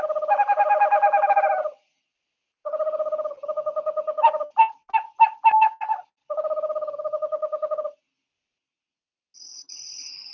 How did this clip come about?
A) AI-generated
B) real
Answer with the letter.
B